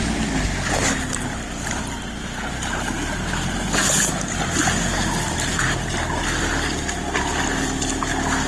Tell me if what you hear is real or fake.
real